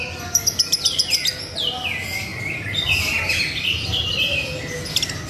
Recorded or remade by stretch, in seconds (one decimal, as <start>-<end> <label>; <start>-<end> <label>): 0.0-5.3 recorded